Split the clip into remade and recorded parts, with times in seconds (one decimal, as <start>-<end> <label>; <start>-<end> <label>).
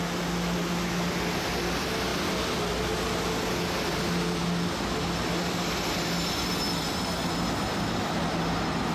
0.0-8.9 recorded